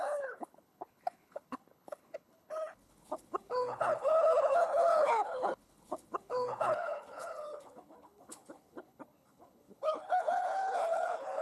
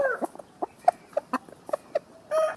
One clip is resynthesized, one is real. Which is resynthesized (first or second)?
first